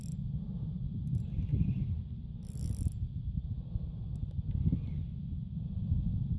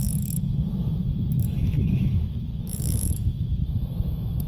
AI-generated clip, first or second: second